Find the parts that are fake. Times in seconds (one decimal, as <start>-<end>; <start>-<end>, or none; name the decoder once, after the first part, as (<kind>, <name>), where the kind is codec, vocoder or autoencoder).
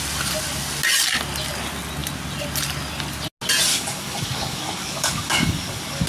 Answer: 3.7-6.1 (codec, DAC)